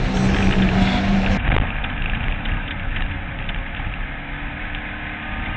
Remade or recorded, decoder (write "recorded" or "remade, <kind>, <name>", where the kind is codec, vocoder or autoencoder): recorded